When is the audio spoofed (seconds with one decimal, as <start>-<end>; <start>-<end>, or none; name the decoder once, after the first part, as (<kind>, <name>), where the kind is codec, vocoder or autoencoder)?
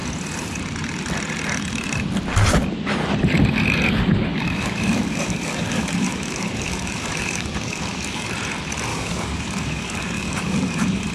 4.3-8.3 (codec, DAC); 8.9-11.1